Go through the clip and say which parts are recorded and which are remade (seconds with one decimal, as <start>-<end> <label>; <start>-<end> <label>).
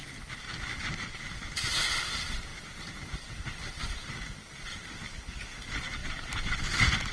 0.0-7.1 recorded